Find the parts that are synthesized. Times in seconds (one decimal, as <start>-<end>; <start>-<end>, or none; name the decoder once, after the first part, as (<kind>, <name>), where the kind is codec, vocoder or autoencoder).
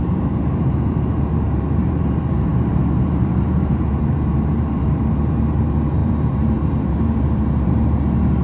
0.0-8.4 (vocoder, BigVGAN v2)